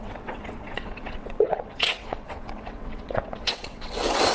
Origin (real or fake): fake